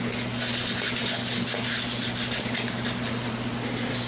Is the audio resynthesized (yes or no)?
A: no